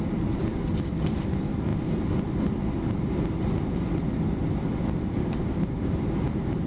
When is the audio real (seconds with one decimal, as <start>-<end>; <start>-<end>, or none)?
0.0-6.7